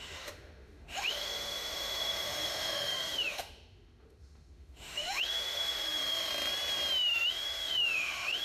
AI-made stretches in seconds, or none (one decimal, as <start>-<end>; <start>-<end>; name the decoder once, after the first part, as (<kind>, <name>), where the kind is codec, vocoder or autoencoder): 0.0-6.3 (autoencoder, DAC-VAE); 7.3-8.4